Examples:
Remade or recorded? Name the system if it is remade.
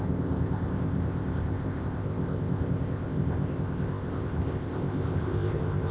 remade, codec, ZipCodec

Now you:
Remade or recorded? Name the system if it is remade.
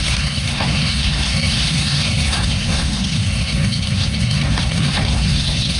remade, codec, SNAC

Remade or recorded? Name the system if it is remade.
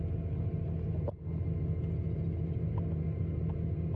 recorded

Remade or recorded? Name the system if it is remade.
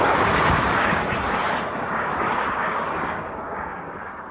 remade, codec, DAC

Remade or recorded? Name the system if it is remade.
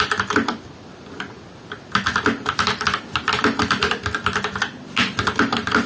recorded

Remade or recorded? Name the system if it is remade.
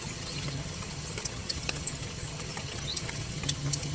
remade, vocoder, HiFi-GAN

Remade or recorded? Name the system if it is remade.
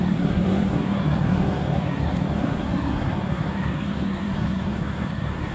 remade, codec, SNAC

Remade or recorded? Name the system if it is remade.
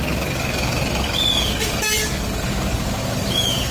remade, codec, DAC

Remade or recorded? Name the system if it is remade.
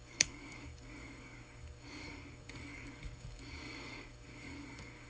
remade, codec, DAC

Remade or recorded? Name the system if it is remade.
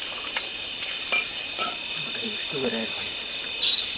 recorded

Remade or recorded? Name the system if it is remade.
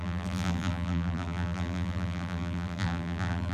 remade, vocoder, BigVGAN v2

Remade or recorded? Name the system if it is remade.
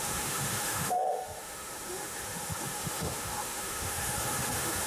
remade, autoencoder, DAC-VAE